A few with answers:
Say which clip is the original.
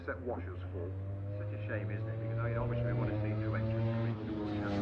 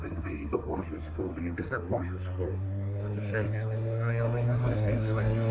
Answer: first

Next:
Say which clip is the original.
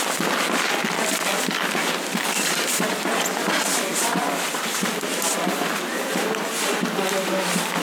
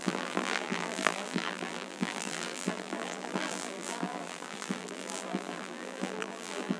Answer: first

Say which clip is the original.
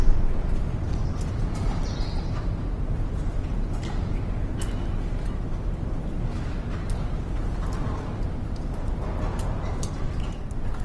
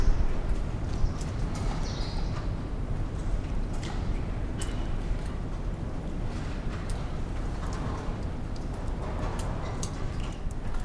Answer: first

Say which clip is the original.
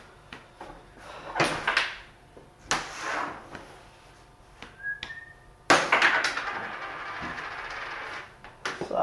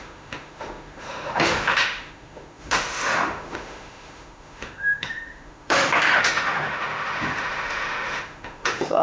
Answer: first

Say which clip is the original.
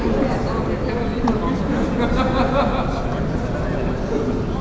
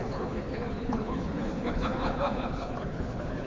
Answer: first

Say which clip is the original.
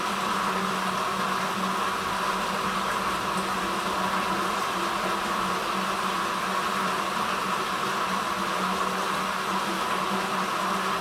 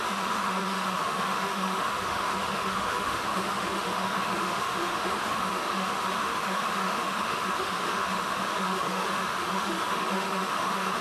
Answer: first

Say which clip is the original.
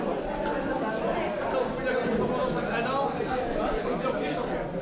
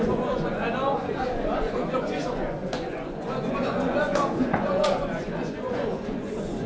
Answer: first